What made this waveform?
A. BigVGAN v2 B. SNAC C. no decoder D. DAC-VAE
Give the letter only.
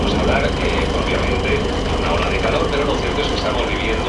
C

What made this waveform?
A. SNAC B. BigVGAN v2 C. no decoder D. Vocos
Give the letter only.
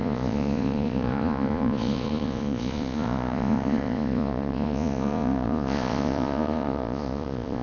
D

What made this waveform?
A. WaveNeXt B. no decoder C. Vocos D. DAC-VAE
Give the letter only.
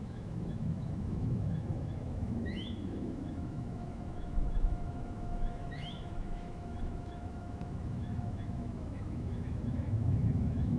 D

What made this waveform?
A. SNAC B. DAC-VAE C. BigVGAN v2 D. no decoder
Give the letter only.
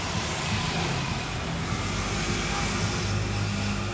D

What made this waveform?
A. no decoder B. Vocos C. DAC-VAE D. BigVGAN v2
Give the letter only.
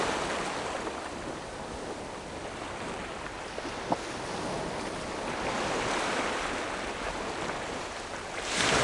A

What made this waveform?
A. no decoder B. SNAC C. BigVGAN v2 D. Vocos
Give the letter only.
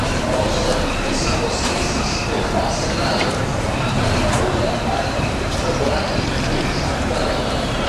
C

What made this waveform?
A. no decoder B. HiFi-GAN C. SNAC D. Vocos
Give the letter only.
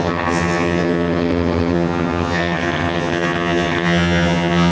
B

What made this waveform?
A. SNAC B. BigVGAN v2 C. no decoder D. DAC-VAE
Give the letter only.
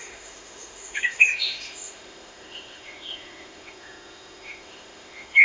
D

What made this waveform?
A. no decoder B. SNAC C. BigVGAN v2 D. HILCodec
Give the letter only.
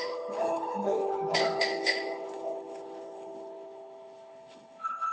D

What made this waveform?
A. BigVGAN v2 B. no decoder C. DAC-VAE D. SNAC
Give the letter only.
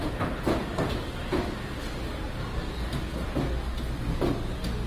B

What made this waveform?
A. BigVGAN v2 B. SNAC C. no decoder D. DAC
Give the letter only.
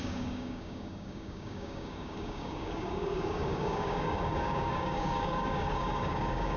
D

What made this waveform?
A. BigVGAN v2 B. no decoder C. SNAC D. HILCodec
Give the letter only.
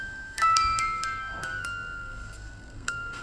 C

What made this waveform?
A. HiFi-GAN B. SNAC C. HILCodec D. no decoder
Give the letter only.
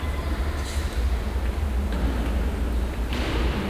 D